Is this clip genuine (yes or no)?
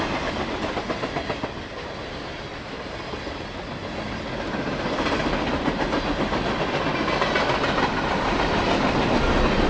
yes